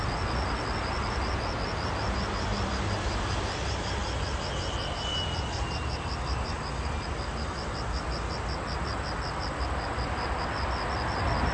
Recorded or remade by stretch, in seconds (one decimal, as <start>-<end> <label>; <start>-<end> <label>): 0.0-11.5 recorded